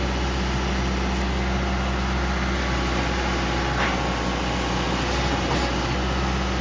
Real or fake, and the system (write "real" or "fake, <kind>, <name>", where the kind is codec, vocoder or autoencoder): real